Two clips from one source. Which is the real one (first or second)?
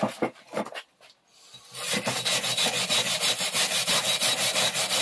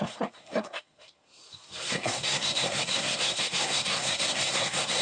first